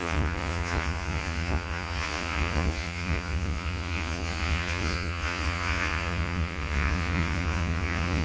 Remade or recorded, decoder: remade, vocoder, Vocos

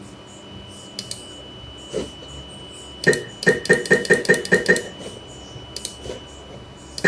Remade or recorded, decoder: recorded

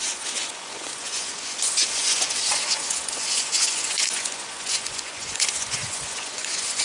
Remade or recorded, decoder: remade, vocoder, Vocos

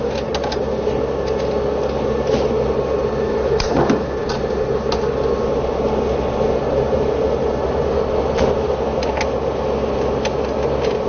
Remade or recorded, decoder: recorded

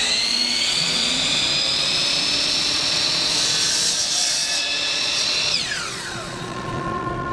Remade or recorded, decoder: remade, vocoder, Vocos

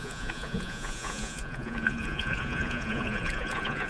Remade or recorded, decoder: remade, vocoder, Vocos